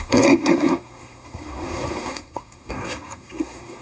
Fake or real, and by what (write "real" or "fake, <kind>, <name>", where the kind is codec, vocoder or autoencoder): fake, codec, SNAC